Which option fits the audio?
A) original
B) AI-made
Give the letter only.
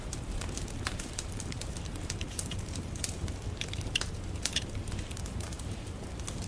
B